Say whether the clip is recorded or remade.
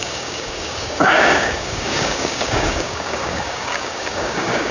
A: remade